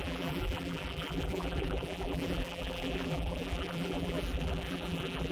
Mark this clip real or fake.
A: fake